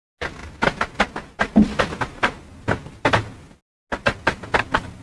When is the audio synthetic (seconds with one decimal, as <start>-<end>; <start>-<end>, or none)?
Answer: none